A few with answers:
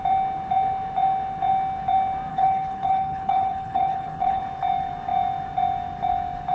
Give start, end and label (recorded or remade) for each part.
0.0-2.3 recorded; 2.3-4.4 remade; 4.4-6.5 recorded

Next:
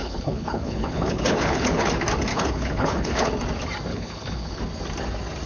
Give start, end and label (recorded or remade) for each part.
0.0-1.9 remade; 1.9-2.3 recorded; 2.3-3.3 remade; 3.3-3.9 recorded; 3.9-4.6 remade; 4.6-5.5 recorded

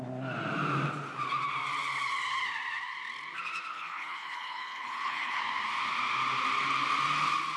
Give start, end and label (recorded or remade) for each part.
0.0-3.7 recorded; 3.7-5.4 remade; 5.4-7.6 recorded

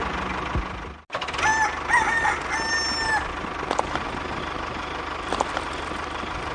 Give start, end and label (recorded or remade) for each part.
0.0-6.5 recorded

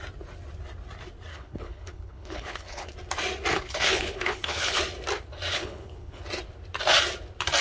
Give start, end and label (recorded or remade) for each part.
0.0-1.3 recorded; 1.3-2.9 remade; 2.9-3.5 recorded; 3.5-4.8 remade; 4.8-5.5 recorded; 5.5-6.2 remade; 6.2-7.6 recorded

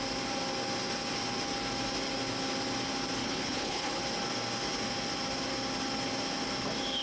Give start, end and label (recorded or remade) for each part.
0.0-3.2 recorded; 3.2-4.0 remade; 4.0-7.0 recorded